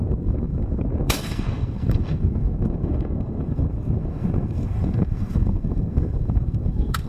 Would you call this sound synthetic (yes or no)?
yes